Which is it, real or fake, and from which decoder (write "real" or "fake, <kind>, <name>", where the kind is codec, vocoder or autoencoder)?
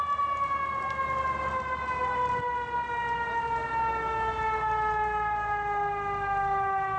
real